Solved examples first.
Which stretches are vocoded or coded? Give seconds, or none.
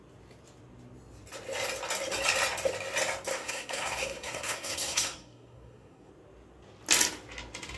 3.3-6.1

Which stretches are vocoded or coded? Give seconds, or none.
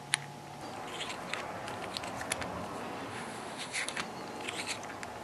3.1-4.0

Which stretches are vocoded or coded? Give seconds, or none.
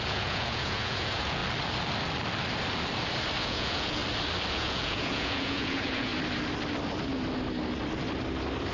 0.0-1.4; 3.4-4.0; 4.5-6.1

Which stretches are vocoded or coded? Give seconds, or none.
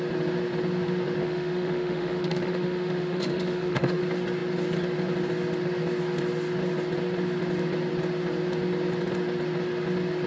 1.2-4.0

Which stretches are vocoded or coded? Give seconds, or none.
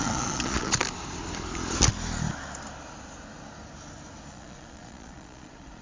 0.0-0.8; 4.3-5.8